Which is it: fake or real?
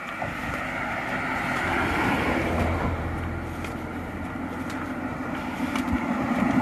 real